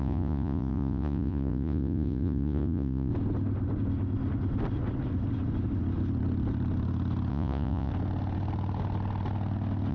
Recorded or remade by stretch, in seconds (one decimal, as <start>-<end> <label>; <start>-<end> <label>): 0.0-3.1 remade; 3.1-7.3 recorded; 7.3-7.9 remade; 7.9-9.9 recorded